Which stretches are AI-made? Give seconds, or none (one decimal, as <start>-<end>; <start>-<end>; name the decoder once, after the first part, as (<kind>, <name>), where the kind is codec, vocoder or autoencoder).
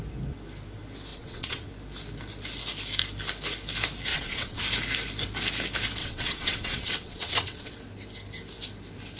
1.1-1.7 (vocoder, WaveNeXt); 4.1-4.6; 6.0-7.7